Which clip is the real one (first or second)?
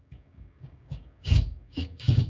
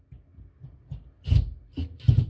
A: second